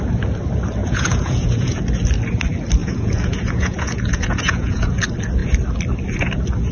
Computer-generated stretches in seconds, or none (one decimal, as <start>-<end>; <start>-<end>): 0.8-1.8; 2.8-5.0